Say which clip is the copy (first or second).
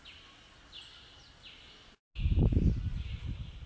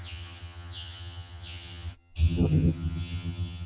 second